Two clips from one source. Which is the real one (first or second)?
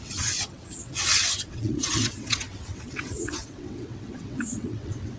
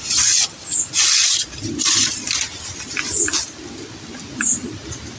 second